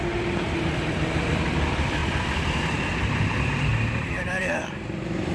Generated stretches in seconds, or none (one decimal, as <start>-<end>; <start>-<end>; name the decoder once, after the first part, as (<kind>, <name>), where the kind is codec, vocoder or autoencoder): 0.0-2.0 (vocoder, BigVGAN v2); 2.6-3.7; 4.3-5.3